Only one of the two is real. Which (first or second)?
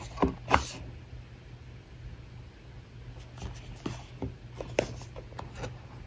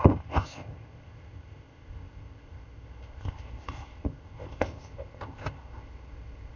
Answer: first